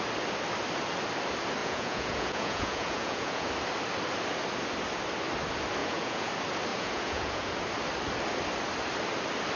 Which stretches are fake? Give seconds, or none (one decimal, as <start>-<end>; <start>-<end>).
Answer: 1.6-3.5; 5.8-6.3; 6.7-7.6